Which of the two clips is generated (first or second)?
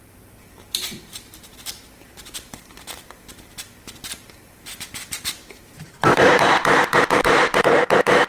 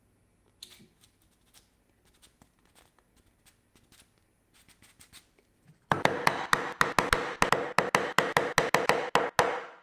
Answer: first